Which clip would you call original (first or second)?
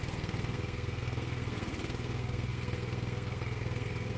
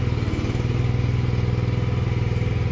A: second